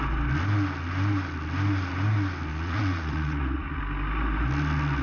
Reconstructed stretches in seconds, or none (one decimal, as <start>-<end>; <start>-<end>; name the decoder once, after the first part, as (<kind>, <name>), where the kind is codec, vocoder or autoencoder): 2.5-3.8 (vocoder, Vocos)